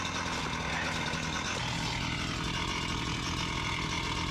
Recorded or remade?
recorded